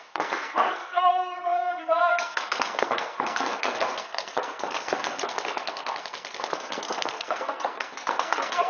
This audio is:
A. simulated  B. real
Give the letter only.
A